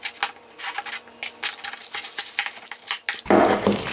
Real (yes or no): yes